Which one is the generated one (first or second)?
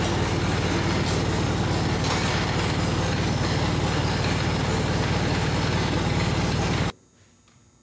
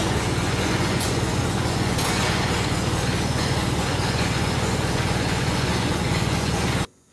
second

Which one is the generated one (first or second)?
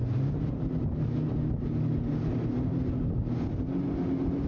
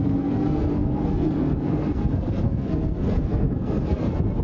second